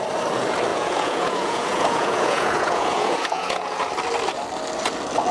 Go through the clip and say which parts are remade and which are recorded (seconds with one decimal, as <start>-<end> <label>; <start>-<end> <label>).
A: 0.0-0.7 recorded; 0.7-3.9 remade; 3.9-5.3 recorded